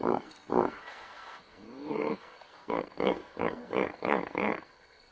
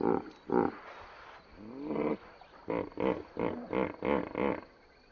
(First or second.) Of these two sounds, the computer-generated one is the first